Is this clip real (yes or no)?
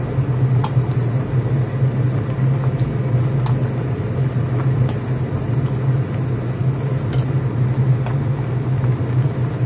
yes